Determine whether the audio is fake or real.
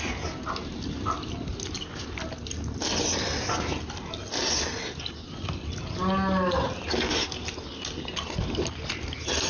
real